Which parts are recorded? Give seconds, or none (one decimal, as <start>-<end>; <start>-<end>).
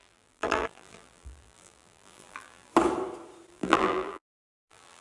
2.7-3.5